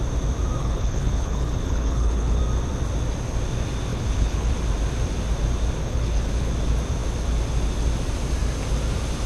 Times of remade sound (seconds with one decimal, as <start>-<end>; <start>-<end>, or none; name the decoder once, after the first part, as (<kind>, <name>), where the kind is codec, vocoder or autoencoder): 0.6-2.4 (codec, HILCodec); 3.9-4.5; 5.8-6.5